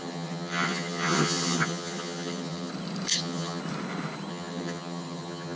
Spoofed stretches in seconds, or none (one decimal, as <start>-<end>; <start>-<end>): 0.0-2.7; 3.1-3.6; 4.3-5.6